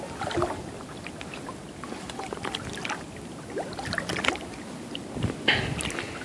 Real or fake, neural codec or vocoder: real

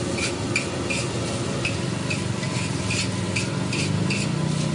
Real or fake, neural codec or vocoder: real